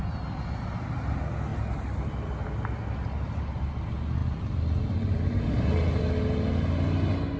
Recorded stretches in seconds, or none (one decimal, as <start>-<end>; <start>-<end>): 0.0-4.2; 6.0-7.4

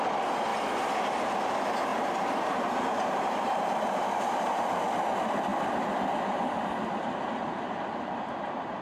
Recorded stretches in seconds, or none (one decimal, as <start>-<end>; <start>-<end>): 0.0-1.9; 4.8-8.8

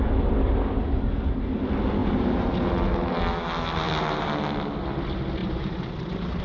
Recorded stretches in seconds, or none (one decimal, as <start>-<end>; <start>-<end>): 0.0-5.4